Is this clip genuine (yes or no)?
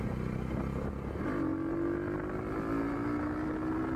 yes